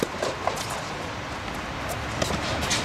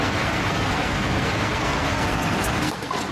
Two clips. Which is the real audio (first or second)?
first